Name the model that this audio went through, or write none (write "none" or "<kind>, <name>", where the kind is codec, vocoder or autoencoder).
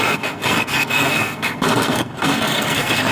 codec, SNAC